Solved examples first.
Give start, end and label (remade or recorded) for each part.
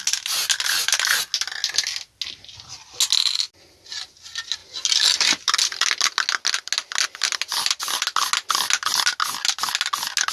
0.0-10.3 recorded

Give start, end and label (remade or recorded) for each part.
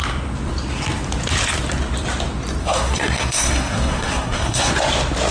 0.0-2.6 recorded; 2.6-4.7 remade; 4.7-5.3 recorded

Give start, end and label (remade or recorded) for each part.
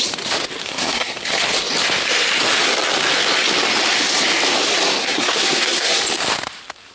0.0-0.6 recorded; 0.6-1.3 remade; 1.3-5.0 recorded; 5.0-6.0 remade; 6.0-6.9 recorded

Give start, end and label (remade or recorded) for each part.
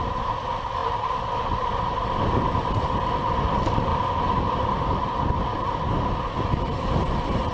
0.0-7.5 recorded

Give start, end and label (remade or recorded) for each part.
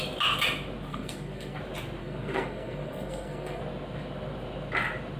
0.0-0.9 recorded; 0.9-1.6 remade; 1.6-2.0 recorded; 2.0-3.6 remade; 3.6-5.2 recorded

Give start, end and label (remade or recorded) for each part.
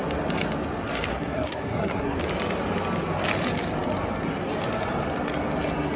0.0-1.1 recorded; 1.1-2.2 remade; 2.2-6.0 recorded